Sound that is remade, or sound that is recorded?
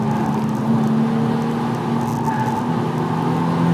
recorded